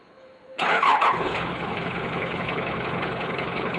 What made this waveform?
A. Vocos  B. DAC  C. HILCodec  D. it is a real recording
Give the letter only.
C